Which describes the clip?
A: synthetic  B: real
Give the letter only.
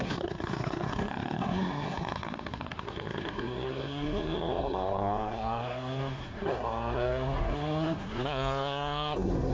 A